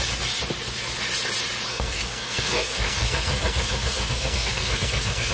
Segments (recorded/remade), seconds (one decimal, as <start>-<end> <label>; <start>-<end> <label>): 0.0-1.7 recorded; 1.7-5.3 remade

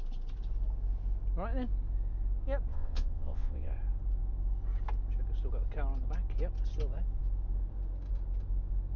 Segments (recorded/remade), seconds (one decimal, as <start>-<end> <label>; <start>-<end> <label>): 0.0-2.7 recorded; 2.7-3.7 remade; 3.7-9.0 recorded

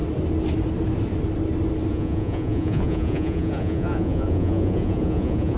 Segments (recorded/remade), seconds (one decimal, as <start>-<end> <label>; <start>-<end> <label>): 0.0-1.9 recorded; 1.9-5.6 remade

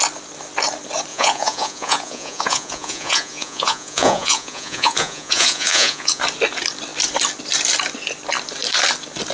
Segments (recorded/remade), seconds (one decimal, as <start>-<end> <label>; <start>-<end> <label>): 0.0-1.1 recorded; 1.1-6.2 remade; 6.2-9.3 recorded

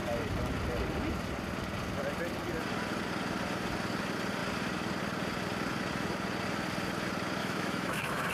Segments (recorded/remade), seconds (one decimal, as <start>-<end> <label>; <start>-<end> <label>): 0.0-7.4 recorded; 7.4-8.3 remade